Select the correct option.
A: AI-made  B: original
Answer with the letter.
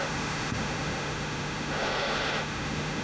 A